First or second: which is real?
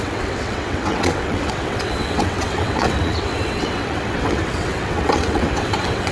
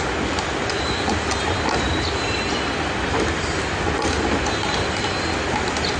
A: second